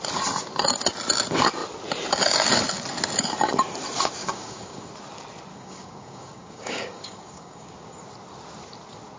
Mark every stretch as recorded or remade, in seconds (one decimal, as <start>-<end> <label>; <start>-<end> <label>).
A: 0.0-4.2 recorded; 4.2-4.9 remade; 4.9-5.5 recorded; 5.5-7.9 remade; 7.9-9.2 recorded